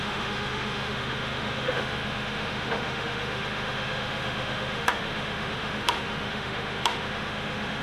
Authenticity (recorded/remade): remade